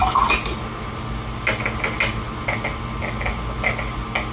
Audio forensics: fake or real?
real